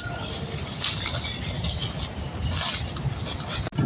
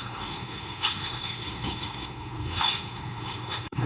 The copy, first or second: second